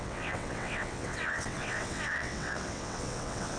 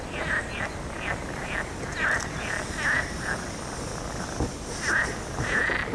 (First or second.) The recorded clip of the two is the second